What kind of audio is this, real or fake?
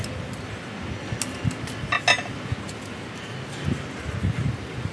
real